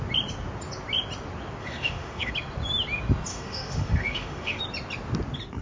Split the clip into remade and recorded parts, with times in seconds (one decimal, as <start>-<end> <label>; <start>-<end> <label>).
0.0-1.6 recorded; 1.6-2.3 remade; 2.3-3.3 recorded; 3.3-4.6 remade; 4.6-5.6 recorded